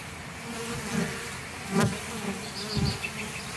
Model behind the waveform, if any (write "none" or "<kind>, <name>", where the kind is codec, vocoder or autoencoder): none